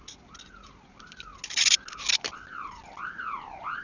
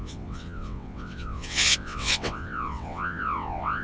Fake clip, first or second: second